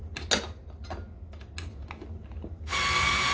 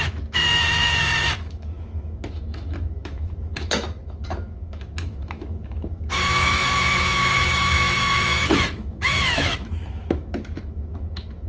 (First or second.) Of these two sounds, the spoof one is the second